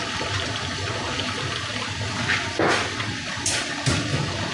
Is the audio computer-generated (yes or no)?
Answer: no